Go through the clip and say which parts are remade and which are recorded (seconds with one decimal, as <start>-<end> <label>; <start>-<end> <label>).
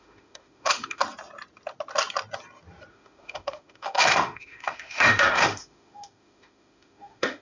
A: 0.0-1.0 remade; 1.0-2.9 recorded; 2.9-7.4 remade